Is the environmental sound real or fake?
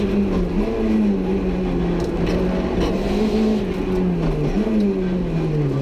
real